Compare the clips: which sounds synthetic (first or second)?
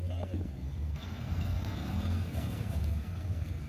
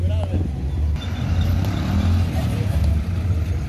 first